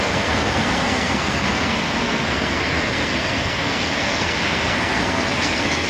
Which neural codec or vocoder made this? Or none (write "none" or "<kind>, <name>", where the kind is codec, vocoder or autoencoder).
codec, SNAC